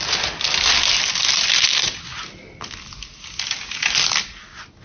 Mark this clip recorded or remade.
recorded